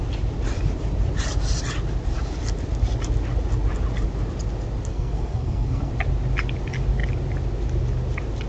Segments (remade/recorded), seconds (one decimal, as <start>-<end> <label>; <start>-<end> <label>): 0.0-4.9 recorded; 4.9-5.9 remade; 5.9-8.5 recorded

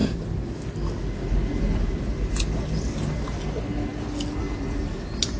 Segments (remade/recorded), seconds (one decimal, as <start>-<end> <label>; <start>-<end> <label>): 0.0-5.4 recorded

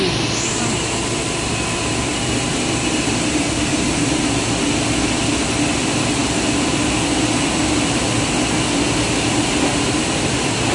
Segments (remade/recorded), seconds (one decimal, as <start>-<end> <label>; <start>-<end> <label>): 0.0-2.1 recorded; 2.1-4.2 remade; 4.2-6.2 recorded; 6.2-6.8 remade; 6.8-10.7 recorded

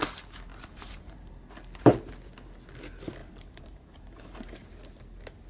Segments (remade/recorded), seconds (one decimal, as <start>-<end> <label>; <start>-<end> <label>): 0.0-0.5 recorded; 0.5-1.3 remade; 1.3-3.2 recorded; 3.2-4.7 remade; 4.7-5.5 recorded

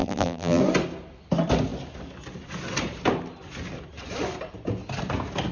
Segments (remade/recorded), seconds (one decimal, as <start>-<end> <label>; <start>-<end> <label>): 0.0-0.6 remade; 0.6-5.5 recorded

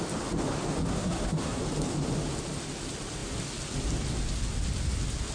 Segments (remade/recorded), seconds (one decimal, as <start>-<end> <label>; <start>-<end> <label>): 0.0-0.9 recorded; 0.9-1.6 remade; 1.6-5.3 recorded

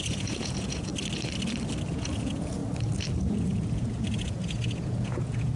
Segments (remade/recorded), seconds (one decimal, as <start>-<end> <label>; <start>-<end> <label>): 0.0-0.9 remade; 0.9-1.9 recorded; 1.9-2.6 remade; 2.6-3.1 recorded; 3.1-5.6 remade